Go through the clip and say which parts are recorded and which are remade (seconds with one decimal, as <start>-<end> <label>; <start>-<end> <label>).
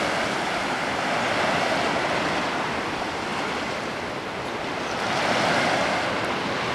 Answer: 0.0-6.7 recorded